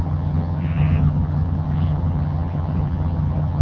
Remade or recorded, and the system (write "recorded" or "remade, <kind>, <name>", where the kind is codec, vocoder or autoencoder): remade, vocoder, HiFi-GAN